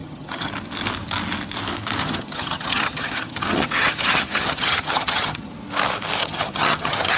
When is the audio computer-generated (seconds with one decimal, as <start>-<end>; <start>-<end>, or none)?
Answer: 0.0-0.5; 2.0-5.5; 6.2-7.2